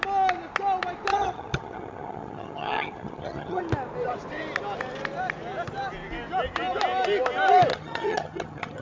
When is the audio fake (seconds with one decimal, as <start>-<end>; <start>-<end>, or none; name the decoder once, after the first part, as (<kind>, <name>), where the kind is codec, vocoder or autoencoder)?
1.1-3.6 (vocoder, HiFi-GAN); 7.7-8.8